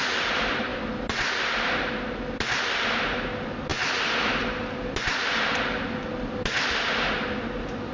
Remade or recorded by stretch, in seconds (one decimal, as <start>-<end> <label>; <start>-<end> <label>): 0.0-7.9 recorded